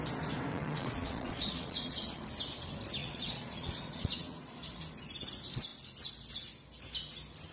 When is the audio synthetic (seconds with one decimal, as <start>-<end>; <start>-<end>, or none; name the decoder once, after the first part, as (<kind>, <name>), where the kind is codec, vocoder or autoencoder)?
0.5-2.2 (vocoder, Vocos); 3.0-4.8